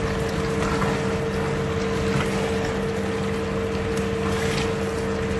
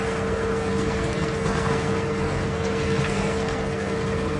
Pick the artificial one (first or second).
second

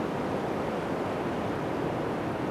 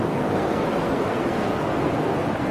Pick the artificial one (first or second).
second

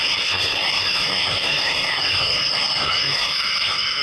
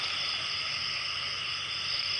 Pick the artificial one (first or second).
first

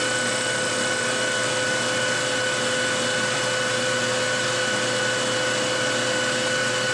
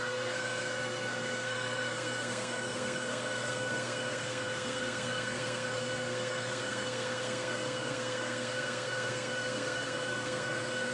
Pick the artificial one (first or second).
second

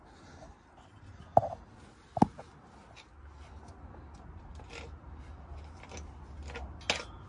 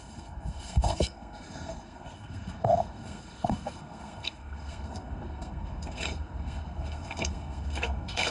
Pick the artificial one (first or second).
second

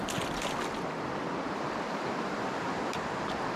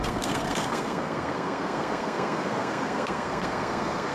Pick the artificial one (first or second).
second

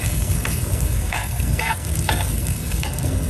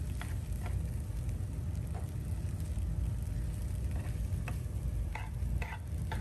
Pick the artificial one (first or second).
first